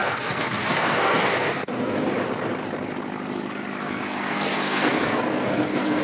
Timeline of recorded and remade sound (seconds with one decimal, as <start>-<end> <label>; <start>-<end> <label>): 0.0-2.1 remade; 2.1-3.8 recorded; 3.8-6.0 remade